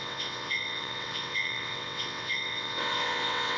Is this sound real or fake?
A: fake